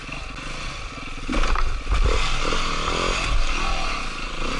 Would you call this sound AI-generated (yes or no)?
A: no